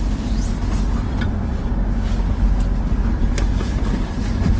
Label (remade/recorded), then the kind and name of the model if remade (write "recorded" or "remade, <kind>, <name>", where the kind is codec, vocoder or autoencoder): recorded